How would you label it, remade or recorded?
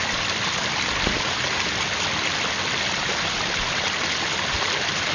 recorded